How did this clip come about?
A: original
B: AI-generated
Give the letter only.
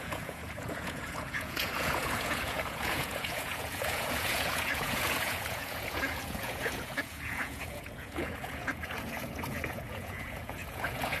B